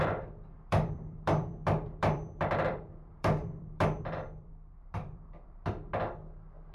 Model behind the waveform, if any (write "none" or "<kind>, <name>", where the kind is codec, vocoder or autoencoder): vocoder, BigVGAN v2